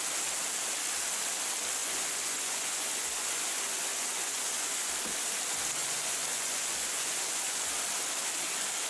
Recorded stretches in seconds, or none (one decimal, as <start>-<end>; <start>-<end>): 0.0-1.8; 4.9-5.8; 7.7-8.9